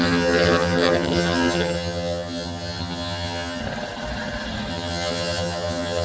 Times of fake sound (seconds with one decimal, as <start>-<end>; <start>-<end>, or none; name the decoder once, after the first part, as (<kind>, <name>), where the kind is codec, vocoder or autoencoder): 0.0-3.6 (vocoder, HiFi-GAN); 4.7-6.0